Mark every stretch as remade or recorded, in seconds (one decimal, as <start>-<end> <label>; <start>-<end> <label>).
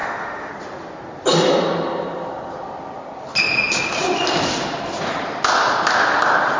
0.0-0.5 remade; 0.5-6.6 recorded